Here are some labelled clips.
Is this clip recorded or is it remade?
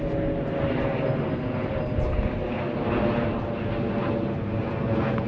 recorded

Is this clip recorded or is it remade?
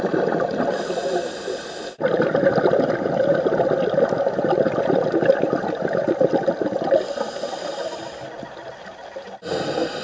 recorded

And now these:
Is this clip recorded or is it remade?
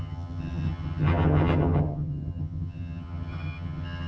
remade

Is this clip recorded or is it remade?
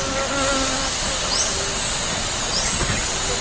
recorded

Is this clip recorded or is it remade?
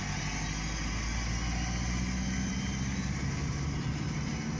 recorded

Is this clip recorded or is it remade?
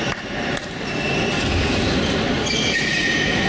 recorded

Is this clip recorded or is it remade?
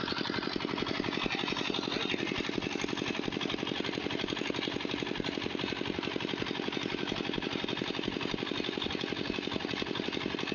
recorded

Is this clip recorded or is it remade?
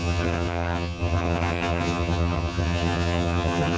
remade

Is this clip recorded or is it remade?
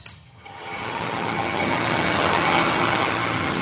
remade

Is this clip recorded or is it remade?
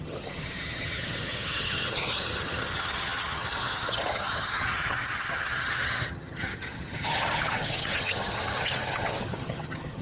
remade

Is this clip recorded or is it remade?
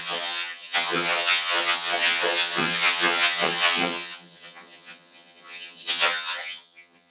remade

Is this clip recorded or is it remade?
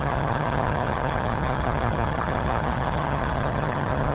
remade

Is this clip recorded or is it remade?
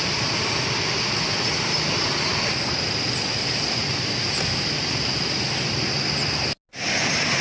recorded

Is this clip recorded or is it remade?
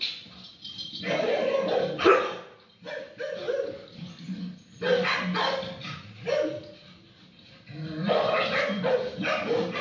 recorded